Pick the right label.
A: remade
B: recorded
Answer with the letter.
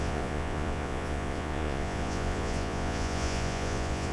A